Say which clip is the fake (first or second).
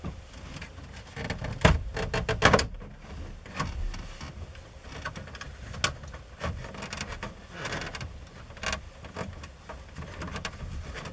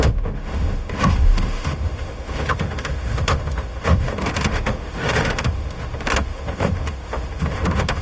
second